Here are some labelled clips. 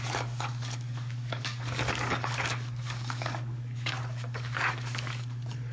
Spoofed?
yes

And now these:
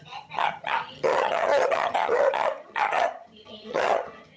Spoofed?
yes